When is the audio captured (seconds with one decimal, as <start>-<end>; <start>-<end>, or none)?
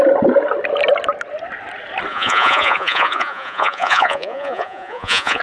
0.0-2.1